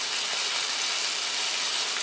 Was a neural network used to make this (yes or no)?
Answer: no